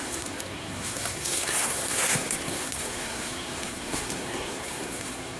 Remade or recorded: remade